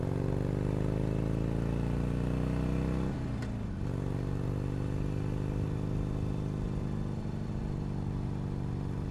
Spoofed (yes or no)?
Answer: no